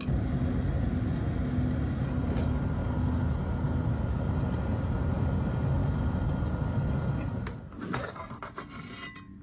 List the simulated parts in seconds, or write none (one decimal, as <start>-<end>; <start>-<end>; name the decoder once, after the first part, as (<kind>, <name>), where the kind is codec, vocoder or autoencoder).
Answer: none